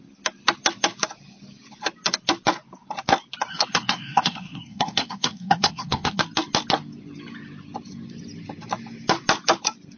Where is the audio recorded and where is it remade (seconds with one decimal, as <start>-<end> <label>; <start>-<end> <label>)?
0.0-3.5 recorded; 3.5-6.2 remade; 6.2-10.0 recorded